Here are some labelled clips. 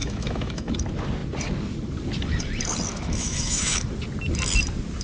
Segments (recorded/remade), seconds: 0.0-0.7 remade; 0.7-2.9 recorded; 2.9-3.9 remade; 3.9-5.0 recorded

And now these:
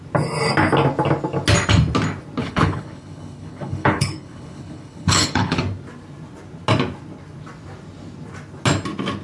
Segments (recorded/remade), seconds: 0.0-2.4 recorded; 2.4-5.6 remade; 5.6-9.2 recorded